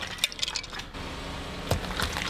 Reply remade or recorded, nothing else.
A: recorded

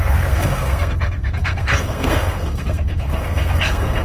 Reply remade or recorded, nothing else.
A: remade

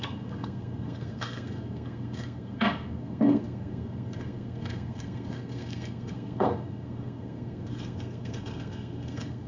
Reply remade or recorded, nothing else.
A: remade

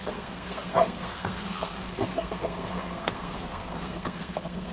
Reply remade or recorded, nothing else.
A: remade